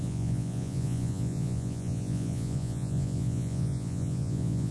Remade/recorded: remade